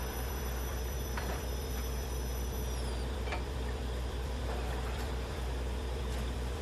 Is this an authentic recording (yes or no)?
no